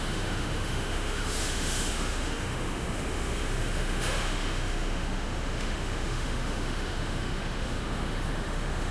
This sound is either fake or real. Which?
fake